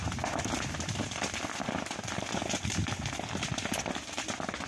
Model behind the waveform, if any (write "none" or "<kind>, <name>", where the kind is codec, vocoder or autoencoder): none